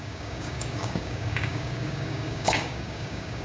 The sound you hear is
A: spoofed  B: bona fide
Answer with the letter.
A